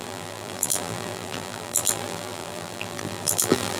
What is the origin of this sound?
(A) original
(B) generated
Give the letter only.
B